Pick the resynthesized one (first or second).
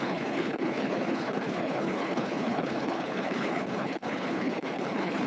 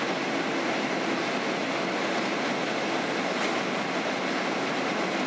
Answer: first